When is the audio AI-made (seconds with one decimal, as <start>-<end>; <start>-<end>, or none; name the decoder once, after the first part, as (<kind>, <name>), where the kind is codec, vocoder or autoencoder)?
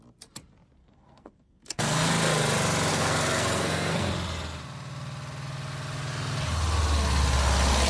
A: 0.8-2.1 (codec, SNAC); 2.9-4.1